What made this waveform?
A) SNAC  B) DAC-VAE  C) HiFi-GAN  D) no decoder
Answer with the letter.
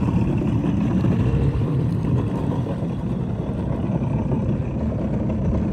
D